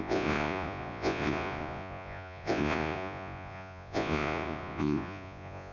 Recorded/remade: remade